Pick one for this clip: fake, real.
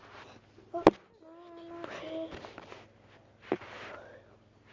real